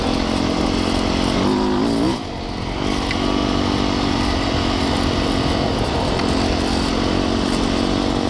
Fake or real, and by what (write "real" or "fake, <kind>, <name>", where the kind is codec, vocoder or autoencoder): real